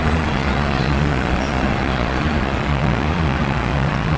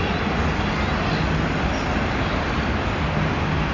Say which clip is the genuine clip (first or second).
second